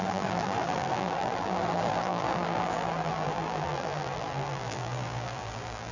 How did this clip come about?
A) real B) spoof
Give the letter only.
B